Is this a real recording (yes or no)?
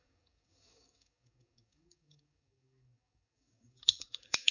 no